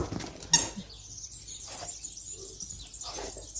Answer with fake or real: real